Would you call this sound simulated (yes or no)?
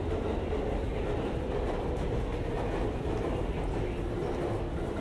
no